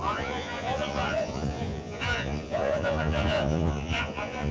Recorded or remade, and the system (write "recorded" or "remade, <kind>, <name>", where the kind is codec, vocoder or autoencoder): remade, vocoder, Vocos